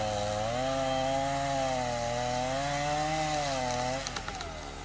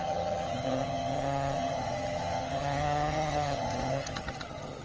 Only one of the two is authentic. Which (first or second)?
first